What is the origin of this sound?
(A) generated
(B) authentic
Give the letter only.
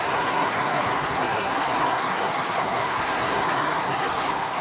A